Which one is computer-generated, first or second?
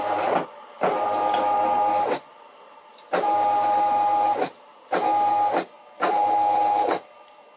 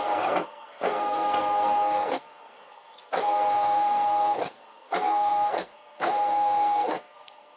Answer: second